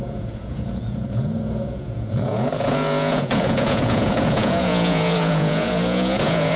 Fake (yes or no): yes